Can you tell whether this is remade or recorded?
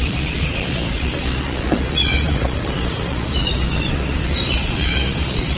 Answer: remade